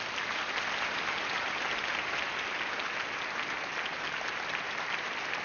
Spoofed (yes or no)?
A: no